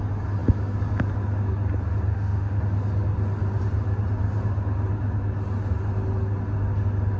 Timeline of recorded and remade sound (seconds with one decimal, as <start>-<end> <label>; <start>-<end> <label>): 0.0-2.1 recorded; 2.1-2.6 remade; 2.6-7.2 recorded